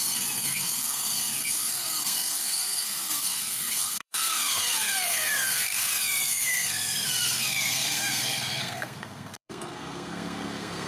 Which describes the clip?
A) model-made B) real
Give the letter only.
A